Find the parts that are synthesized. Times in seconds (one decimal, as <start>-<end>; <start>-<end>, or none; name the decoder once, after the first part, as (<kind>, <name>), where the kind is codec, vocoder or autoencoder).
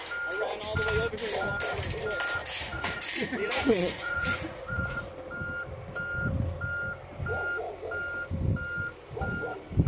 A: 2.4-5.1 (vocoder, Vocos)